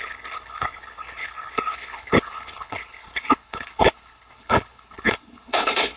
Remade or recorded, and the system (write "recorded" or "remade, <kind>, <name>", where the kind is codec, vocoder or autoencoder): remade, codec, HILCodec